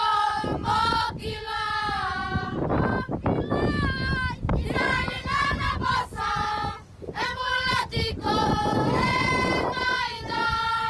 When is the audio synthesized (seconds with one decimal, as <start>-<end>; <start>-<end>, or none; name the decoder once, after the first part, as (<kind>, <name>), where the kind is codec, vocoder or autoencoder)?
none